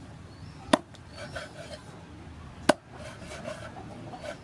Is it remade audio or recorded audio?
recorded